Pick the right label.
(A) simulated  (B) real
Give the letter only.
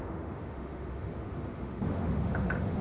A